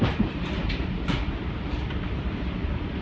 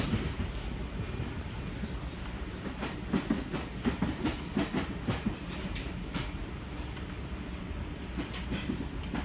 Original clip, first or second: second